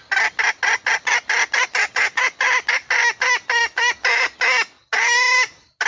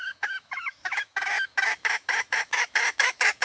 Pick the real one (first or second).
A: first